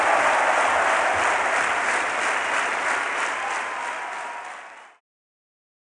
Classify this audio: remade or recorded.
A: recorded